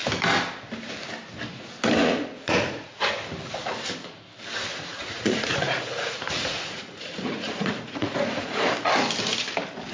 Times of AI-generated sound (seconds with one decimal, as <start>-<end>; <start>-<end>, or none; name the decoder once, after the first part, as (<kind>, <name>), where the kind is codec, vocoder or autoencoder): 2.0-3.1 (vocoder, Vocos); 4.7-8.7